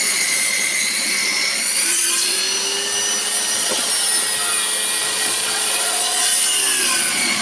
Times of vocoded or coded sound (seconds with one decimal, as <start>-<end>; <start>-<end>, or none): 0.0-2.4; 3.5-3.9; 5.0-6.3; 6.8-7.4